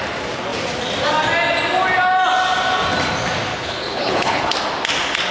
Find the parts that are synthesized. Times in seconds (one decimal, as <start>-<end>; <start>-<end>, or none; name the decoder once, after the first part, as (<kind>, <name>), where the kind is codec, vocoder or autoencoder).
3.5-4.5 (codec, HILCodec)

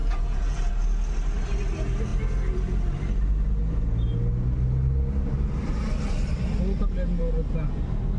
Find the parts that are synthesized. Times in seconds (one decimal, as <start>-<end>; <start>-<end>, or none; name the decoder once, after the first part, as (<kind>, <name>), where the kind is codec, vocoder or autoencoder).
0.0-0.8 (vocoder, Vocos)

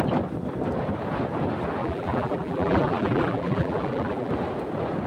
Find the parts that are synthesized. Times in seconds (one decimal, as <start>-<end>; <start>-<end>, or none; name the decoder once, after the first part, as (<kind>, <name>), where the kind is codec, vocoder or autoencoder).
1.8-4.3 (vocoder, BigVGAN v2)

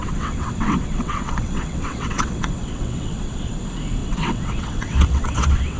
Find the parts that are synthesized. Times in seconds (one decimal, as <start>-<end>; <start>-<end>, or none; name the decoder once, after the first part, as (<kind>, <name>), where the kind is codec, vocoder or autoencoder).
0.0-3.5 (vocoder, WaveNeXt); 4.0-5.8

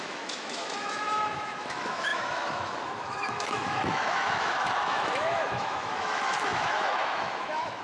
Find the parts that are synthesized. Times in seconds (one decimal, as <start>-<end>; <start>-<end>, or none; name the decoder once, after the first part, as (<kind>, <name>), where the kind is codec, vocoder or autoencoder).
0.0-7.8 (autoencoder, DAC-VAE)